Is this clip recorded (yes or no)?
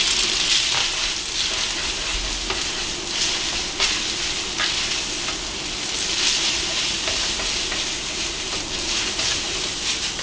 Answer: yes